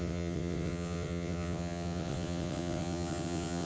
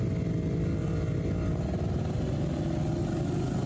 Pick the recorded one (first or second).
second